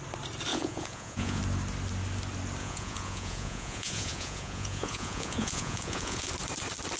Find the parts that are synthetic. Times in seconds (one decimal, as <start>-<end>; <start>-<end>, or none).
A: 0.5-1.4; 2.6-6.3